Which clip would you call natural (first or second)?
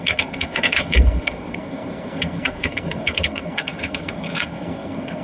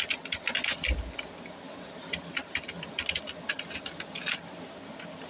second